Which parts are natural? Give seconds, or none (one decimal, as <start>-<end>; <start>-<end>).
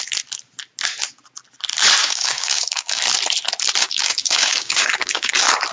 0.0-2.0; 3.0-3.8; 5.3-5.7